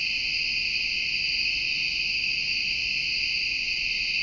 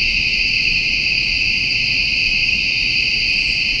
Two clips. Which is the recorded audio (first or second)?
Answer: first